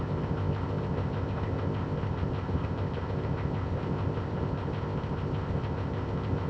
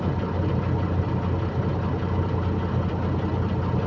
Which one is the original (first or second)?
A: second